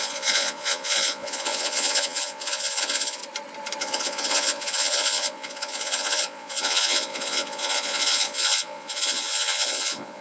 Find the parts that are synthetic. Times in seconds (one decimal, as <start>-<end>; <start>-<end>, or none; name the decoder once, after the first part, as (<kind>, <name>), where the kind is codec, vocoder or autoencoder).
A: 0.0-3.2 (vocoder, Vocos); 3.8-10.2